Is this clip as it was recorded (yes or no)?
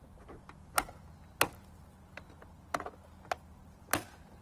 yes